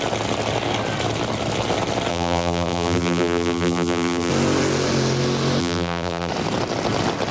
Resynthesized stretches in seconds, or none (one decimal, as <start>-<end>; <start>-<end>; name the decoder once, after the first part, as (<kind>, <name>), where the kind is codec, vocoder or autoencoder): 2.1-4.3 (vocoder, BigVGAN v2); 5.6-6.3